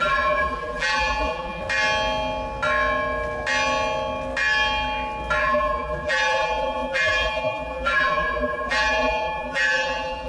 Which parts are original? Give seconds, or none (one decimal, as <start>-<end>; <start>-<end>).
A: 1.6-5.4